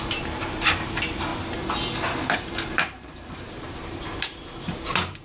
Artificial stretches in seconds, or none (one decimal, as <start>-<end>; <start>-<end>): 0.0-1.3; 2.5-5.2